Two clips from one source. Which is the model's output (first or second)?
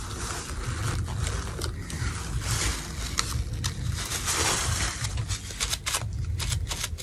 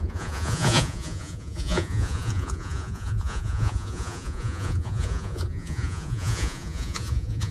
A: second